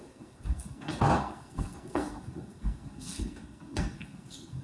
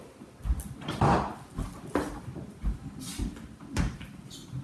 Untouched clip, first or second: second